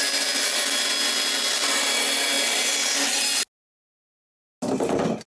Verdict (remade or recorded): recorded